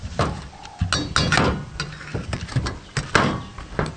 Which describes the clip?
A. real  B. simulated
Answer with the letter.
A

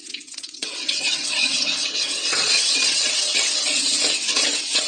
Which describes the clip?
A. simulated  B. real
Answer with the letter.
A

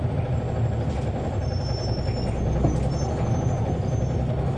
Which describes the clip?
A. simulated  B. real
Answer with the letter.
B